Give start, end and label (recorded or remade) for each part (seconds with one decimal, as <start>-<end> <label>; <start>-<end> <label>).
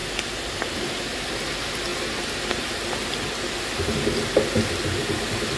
0.0-5.6 recorded